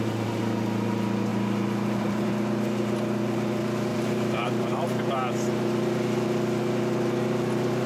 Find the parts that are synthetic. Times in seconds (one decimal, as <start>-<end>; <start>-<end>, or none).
1.3-2.3; 3.9-5.1